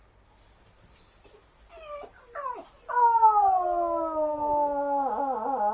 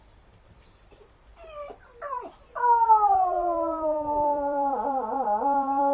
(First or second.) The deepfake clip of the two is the second